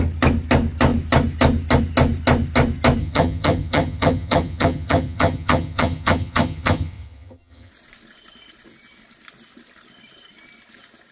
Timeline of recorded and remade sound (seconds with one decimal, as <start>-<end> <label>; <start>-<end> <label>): 0.0-3.0 recorded; 3.0-7.7 remade; 7.7-11.1 recorded